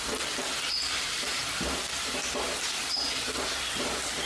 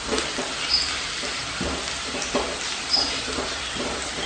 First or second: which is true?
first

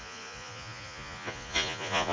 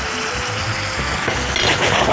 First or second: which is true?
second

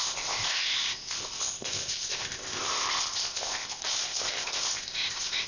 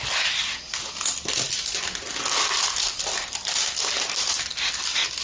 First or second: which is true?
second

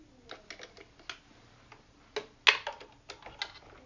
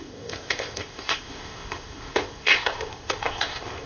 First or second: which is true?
first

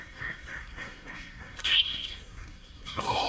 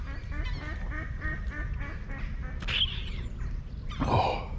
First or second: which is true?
second